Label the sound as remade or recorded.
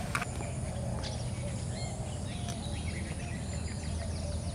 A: recorded